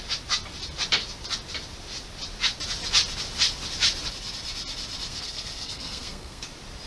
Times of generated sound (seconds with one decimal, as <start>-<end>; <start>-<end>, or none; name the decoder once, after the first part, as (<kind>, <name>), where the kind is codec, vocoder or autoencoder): 5.1-6.5 (codec, SNAC)

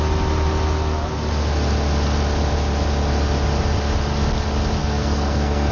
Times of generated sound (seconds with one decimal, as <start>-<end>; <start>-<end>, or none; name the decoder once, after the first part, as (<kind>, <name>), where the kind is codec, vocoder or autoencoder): 4.8-5.7 (codec, SNAC)

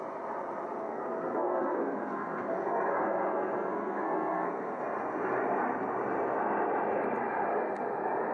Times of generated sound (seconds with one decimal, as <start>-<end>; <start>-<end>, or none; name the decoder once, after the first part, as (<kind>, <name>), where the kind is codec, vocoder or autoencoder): 0.8-4.8 (codec, SNAC)

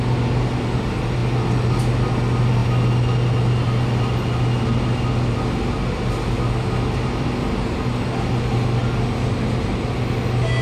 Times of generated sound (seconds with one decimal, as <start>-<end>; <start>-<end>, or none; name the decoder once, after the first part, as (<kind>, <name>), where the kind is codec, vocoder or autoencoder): none

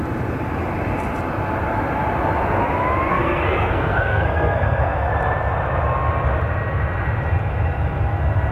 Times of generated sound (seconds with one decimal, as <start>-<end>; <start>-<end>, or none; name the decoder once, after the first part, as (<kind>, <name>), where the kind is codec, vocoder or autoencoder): 3.1-5.1 (codec, SNAC)

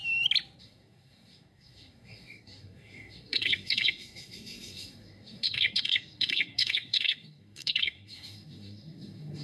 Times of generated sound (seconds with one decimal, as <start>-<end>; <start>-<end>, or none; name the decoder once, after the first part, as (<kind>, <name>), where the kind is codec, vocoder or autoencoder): 0.6-9.4 (codec, SNAC)

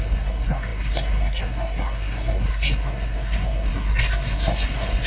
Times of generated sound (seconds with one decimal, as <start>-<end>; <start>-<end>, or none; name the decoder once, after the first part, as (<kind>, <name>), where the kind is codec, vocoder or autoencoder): 0.0-5.1 (codec, SNAC)

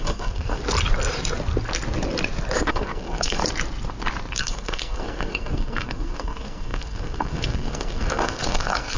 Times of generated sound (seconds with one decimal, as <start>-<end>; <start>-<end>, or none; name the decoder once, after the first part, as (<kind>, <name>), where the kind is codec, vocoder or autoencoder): 0.0-0.6 (codec, SNAC); 2.7-3.4; 4.4-9.0